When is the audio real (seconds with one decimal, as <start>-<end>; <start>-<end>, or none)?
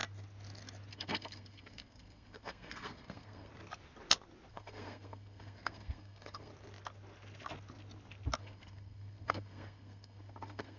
0.0-0.9; 3.5-4.5; 6.5-8.4